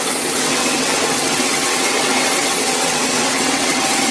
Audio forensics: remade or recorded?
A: remade